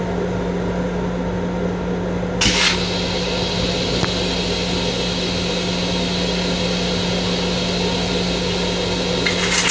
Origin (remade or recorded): recorded